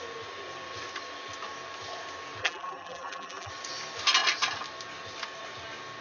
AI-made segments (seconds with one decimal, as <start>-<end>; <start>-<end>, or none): 2.4-3.5